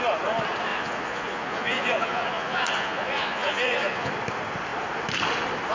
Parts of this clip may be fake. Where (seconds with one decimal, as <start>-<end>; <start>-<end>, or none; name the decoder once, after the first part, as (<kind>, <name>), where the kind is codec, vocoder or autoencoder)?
0.7-4.1 (vocoder, Vocos)

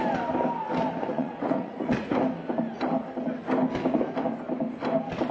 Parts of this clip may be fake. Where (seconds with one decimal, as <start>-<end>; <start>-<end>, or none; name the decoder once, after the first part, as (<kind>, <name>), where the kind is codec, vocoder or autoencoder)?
1.1-2.1 (vocoder, Vocos)

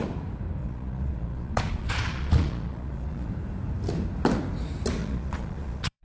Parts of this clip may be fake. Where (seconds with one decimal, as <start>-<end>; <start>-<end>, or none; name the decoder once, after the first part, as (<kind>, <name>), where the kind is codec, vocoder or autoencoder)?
0.6-3.3 (vocoder, Vocos); 5.0-6.0

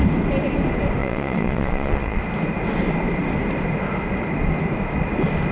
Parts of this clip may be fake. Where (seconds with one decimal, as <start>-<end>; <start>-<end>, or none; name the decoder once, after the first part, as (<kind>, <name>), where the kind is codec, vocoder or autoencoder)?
1.0-2.2 (vocoder, Vocos)

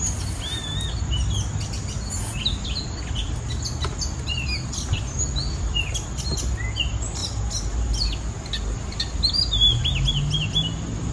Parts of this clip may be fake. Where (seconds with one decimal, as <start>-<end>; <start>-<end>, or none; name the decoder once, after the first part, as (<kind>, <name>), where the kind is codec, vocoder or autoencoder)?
none

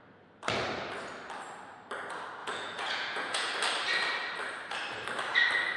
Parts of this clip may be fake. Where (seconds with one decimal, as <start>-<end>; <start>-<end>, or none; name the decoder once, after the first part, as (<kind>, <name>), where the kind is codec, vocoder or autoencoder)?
2.4-3.5 (vocoder, Vocos)